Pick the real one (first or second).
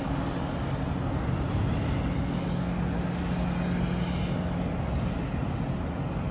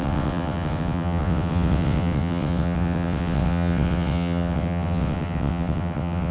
first